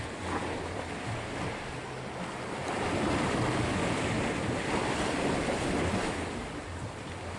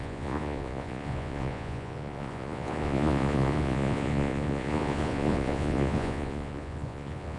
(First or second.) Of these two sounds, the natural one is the first